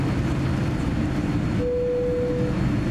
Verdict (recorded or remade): recorded